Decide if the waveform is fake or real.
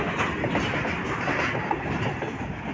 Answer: real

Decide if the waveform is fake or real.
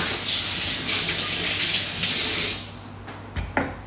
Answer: real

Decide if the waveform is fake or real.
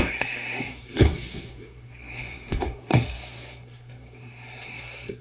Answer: fake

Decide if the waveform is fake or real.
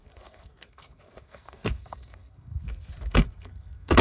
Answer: fake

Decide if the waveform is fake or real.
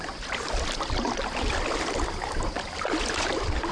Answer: real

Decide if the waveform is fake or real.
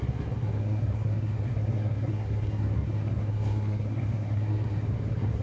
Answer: fake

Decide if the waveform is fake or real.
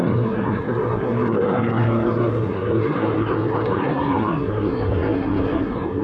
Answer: fake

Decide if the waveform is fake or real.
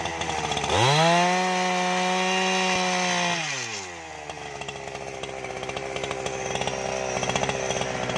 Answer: real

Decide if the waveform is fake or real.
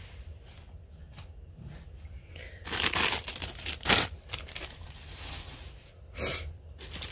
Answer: real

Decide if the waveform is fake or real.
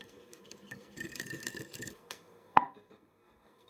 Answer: fake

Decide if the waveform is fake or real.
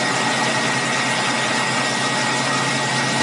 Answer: real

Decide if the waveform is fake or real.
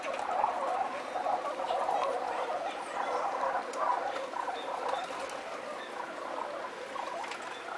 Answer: real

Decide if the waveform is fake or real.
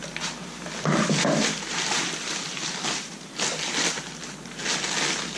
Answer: real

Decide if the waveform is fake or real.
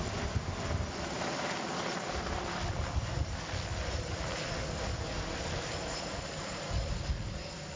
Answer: real